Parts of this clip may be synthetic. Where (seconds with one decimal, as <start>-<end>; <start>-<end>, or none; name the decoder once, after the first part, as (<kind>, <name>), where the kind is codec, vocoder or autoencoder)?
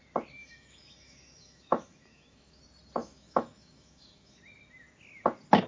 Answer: 0.4-2.6 (autoencoder, DAC-VAE); 3.0-4.4